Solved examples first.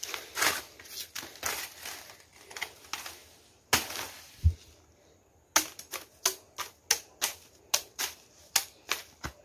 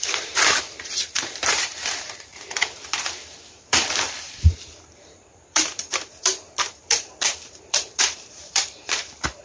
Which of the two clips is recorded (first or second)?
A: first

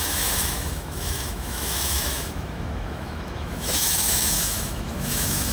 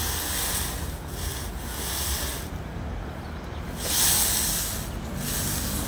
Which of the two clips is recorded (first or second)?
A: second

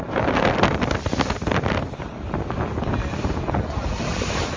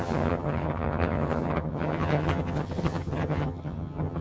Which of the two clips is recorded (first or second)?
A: first